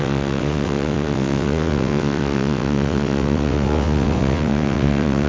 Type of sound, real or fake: fake